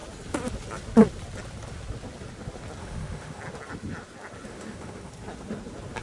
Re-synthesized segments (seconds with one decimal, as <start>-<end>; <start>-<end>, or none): 2.8-3.4; 4.5-5.1